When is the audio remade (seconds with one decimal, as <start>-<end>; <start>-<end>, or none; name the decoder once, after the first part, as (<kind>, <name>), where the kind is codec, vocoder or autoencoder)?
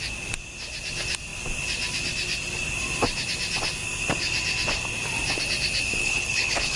6.0-6.8 (codec, HILCodec)